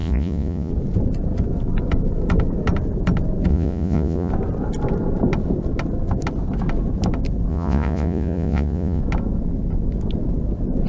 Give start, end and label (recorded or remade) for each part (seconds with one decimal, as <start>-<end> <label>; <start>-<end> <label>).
0.0-0.7 remade; 0.7-3.5 recorded; 3.5-4.3 remade; 4.3-7.5 recorded; 7.5-9.0 remade; 9.0-10.9 recorded